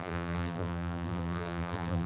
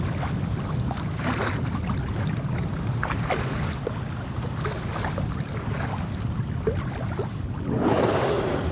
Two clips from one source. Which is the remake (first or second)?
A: first